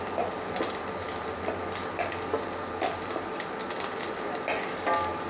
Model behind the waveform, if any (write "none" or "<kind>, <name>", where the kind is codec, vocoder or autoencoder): none